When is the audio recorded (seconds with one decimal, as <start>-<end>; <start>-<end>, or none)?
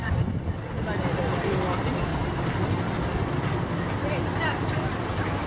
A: 0.5-5.5